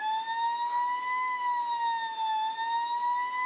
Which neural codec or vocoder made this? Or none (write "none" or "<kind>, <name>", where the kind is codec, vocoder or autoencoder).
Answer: none